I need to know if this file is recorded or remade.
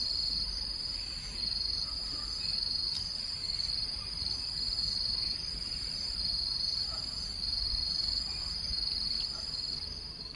remade